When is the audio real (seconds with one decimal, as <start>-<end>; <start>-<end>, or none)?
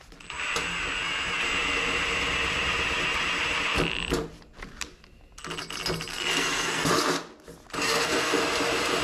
0.0-6.1; 6.9-7.8; 8.4-9.0